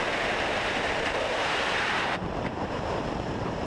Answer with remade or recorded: remade